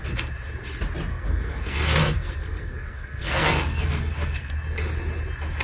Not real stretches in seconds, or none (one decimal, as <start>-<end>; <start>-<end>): 1.1-4.5